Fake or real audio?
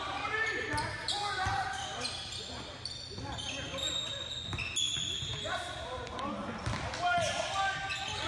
real